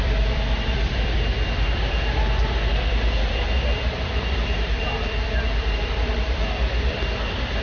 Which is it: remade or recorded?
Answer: remade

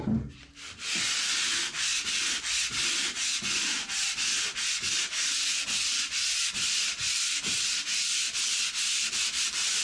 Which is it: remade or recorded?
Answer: recorded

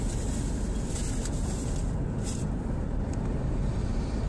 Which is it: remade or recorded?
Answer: recorded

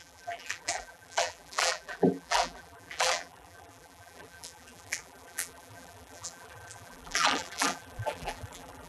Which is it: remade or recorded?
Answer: remade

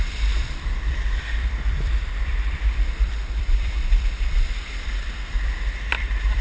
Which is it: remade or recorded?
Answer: remade